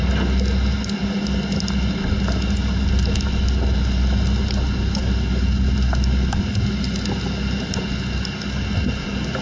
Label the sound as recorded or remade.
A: recorded